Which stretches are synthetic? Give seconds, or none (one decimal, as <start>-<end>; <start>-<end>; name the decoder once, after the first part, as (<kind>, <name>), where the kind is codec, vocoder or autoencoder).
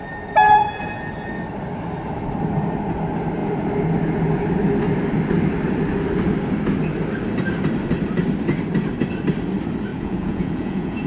9.9-11.1 (vocoder, Vocos)